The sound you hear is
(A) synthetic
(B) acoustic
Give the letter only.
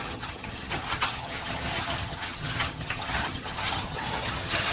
A